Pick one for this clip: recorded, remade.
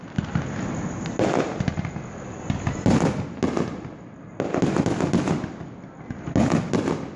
recorded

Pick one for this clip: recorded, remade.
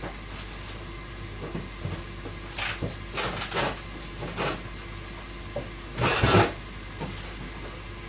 recorded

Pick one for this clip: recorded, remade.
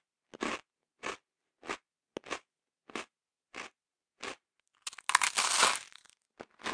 recorded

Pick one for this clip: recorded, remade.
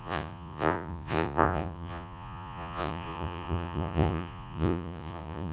remade